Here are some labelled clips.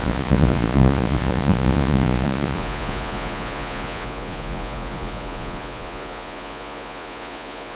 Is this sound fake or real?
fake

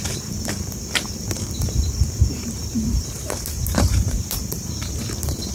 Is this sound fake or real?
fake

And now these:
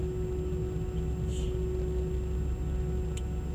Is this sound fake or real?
real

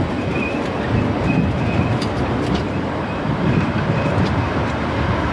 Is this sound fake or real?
real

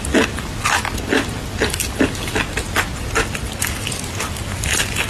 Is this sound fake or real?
real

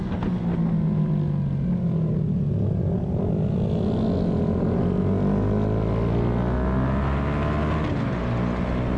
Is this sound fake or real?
real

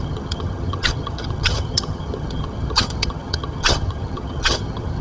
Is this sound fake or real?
fake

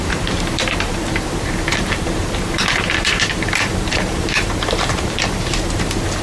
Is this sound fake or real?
fake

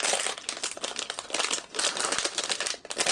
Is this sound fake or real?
real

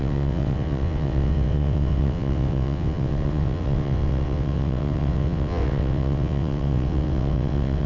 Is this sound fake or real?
fake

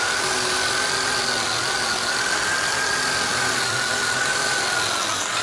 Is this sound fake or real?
real